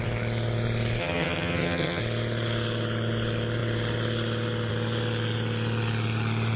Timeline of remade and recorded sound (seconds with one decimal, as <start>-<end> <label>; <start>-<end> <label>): 0.0-1.0 recorded; 1.0-2.0 remade; 2.0-6.6 recorded